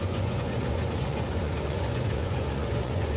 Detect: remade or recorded remade